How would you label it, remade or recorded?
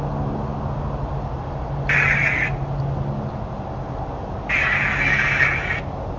recorded